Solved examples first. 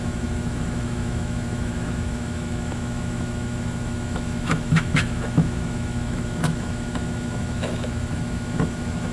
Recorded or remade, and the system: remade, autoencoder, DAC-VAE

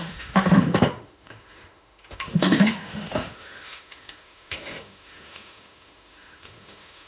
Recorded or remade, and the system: remade, autoencoder, DAC-VAE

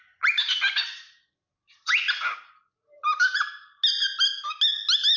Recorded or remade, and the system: recorded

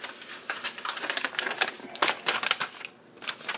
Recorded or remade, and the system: recorded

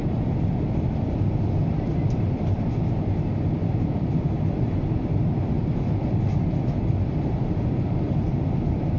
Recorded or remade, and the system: remade, vocoder, BigVGAN v2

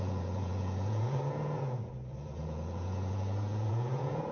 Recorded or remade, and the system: remade, vocoder, Vocos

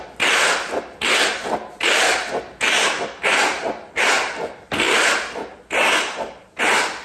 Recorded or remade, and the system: recorded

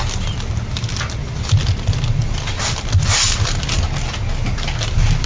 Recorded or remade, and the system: recorded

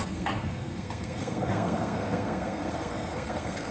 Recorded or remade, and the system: remade, codec, SNAC